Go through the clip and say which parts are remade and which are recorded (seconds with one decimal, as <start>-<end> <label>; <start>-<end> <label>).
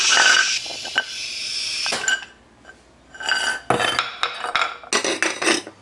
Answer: 0.0-5.8 recorded